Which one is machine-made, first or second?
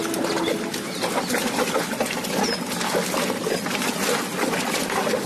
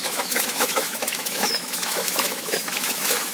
second